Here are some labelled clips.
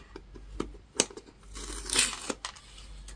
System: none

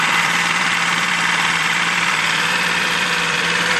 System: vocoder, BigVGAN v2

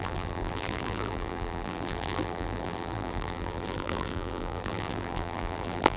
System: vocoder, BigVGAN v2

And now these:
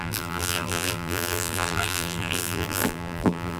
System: vocoder, BigVGAN v2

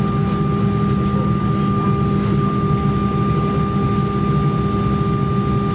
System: none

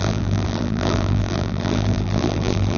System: vocoder, BigVGAN v2